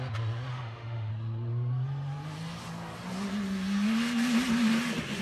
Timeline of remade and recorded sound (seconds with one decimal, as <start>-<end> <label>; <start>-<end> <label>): 0.0-0.5 recorded; 0.5-1.1 remade; 1.1-5.2 recorded